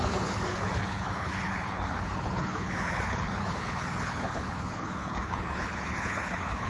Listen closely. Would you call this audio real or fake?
fake